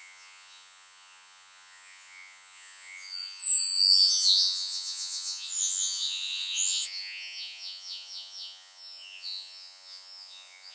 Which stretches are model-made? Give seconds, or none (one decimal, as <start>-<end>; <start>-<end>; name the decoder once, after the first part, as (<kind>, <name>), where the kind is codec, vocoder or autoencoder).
0.0-10.7 (vocoder, Vocos)

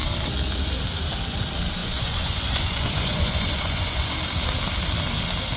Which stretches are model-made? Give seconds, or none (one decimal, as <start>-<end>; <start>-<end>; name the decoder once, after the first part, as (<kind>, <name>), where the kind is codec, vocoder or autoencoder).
1.8-4.1 (vocoder, Vocos)

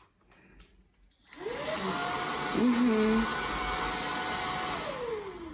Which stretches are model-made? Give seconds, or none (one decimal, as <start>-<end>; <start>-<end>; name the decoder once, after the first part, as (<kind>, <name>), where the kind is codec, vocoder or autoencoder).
none

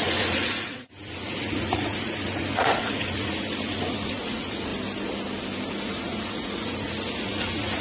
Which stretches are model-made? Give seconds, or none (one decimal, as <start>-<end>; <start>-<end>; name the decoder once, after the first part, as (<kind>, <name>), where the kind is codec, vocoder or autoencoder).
0.0-4.7 (vocoder, Vocos); 5.7-7.8

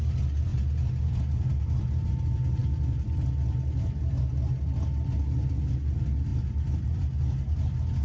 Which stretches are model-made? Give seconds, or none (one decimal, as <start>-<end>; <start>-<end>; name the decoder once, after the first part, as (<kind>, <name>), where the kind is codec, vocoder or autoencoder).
none

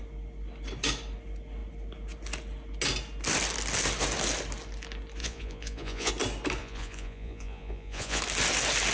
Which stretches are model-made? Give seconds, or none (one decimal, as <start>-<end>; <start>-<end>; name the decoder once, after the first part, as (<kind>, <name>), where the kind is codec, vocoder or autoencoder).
5.2-6.1 (vocoder, Vocos); 6.6-8.2

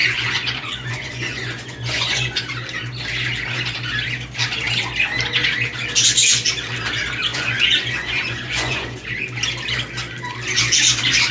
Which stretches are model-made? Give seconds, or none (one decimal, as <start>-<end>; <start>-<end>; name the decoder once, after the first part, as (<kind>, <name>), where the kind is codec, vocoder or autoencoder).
0.0-2.4 (vocoder, Vocos); 7.3-9.1